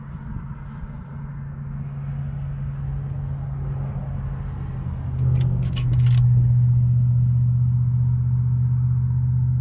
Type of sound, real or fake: real